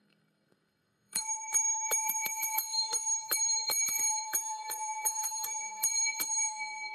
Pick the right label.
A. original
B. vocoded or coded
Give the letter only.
B